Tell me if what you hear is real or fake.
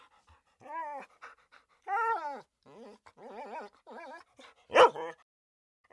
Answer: real